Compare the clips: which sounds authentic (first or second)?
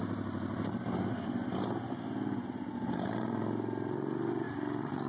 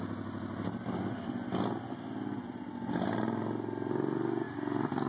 second